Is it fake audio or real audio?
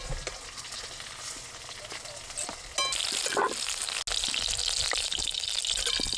real